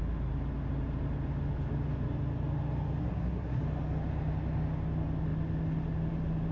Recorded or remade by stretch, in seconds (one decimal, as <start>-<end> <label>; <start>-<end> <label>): 0.0-3.0 recorded; 3.0-3.6 remade; 3.6-6.5 recorded